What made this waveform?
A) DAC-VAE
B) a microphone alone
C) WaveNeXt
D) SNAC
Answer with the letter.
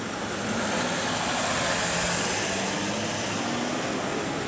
B